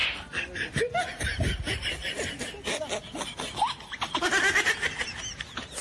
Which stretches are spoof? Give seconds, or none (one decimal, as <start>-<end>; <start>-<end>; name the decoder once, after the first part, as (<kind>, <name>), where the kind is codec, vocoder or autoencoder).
none